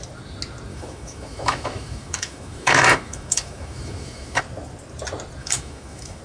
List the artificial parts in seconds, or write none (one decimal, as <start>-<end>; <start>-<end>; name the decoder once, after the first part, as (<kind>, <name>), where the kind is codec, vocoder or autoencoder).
0.7-4.4 (autoencoder, DAC-VAE); 5.4-6.2